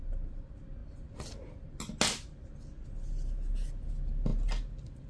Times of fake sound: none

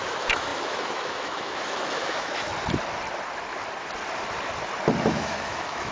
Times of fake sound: 0.0-2.5; 5.1-5.9

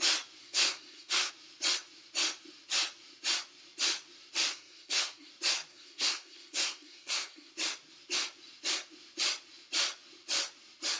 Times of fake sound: 0.4-1.3; 4.5-5.3; 5.7-7.5

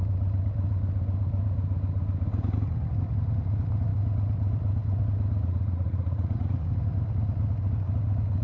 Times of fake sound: 5.4-6.7

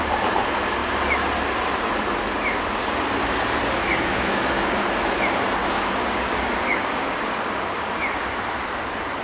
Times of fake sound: 3.8-4.8; 5.6-8.0

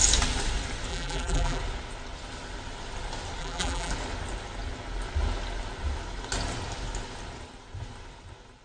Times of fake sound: 0.9-1.6; 3.4-3.9

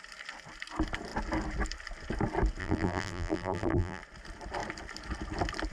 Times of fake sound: 2.6-4.0

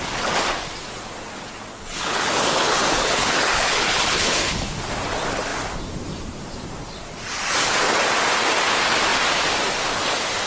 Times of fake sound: 1.7-4.8